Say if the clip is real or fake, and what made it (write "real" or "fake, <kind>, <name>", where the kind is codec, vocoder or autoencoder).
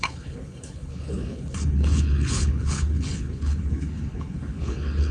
fake, codec, HILCodec